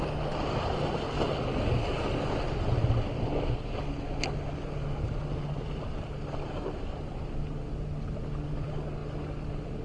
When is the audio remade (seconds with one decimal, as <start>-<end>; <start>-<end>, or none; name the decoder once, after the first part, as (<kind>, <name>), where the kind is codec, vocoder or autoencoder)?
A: none